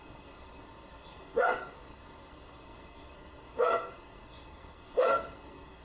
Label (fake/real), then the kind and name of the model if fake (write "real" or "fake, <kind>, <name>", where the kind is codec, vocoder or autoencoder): fake, codec, SNAC